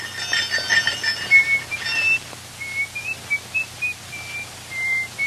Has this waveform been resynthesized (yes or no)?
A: no